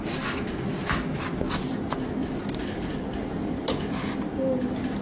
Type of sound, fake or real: real